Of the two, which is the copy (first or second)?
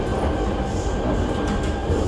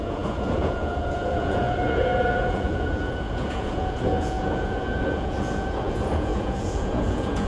second